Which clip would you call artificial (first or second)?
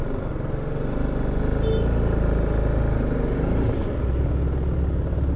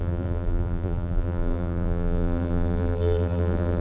second